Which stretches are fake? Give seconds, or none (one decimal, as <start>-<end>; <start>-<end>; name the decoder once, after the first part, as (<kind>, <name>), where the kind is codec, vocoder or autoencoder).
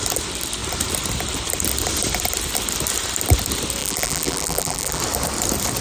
3.8-5.0 (vocoder, BigVGAN v2)